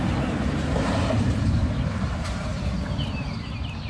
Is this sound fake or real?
fake